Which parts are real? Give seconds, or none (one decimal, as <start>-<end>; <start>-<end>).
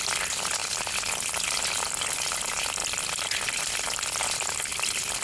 0.0-5.2